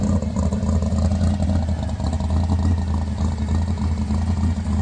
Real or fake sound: real